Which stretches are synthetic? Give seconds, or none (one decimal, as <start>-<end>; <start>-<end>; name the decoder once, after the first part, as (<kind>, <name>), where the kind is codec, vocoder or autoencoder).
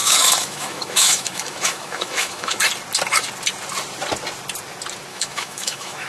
0.0-2.6 (autoencoder, DAC-VAE); 5.1-6.1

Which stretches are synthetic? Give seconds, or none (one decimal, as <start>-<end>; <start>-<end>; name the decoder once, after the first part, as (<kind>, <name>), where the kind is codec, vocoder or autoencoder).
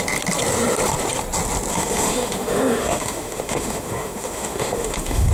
1.7-5.3 (autoencoder, DAC-VAE)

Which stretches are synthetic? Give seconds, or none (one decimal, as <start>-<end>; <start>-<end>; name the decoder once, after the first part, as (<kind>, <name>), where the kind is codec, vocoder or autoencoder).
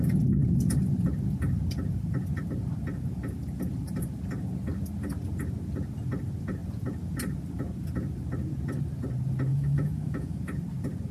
9.5-10.4 (autoencoder, DAC-VAE)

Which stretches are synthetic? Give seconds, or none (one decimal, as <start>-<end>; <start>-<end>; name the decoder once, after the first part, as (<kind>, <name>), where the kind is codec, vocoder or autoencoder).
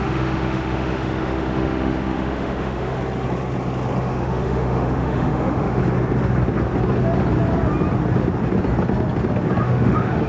0.0-3.0 (autoencoder, DAC-VAE); 4.0-5.8; 9.6-10.3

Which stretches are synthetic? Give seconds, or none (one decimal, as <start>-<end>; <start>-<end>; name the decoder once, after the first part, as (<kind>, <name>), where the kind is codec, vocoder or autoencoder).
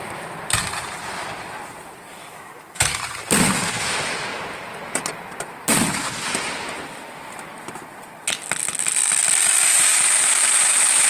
2.1-3.0 (autoencoder, DAC-VAE)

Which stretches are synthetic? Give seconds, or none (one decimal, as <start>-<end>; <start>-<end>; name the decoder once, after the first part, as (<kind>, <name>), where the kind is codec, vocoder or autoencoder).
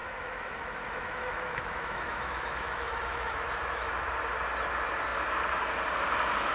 0.0-3.9 (autoencoder, DAC-VAE)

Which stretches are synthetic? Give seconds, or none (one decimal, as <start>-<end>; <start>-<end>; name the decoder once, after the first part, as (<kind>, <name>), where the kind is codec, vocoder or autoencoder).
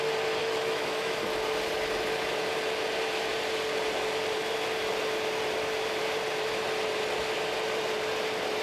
0.4-1.2 (autoencoder, DAC-VAE)